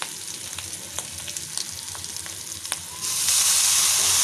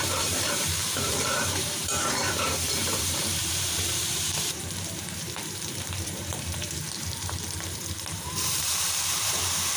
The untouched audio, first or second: first